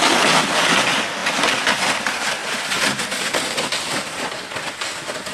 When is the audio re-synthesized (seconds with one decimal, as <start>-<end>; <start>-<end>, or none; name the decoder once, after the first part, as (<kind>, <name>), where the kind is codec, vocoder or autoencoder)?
none